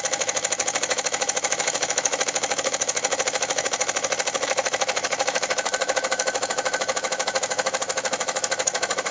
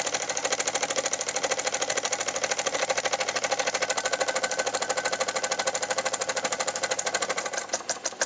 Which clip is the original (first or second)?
second